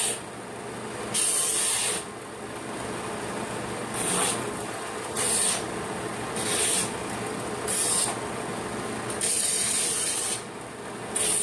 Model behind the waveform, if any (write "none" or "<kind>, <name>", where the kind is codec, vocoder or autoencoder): none